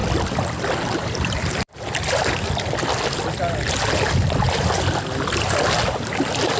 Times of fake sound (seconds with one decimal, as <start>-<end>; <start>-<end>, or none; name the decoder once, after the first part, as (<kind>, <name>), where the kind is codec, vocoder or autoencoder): 0.0-6.6 (vocoder, BigVGAN v2)